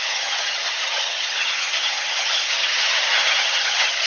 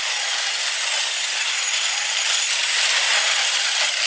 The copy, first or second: first